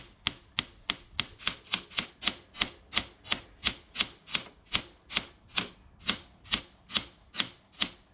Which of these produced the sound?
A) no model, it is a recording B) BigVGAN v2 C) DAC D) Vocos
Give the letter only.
A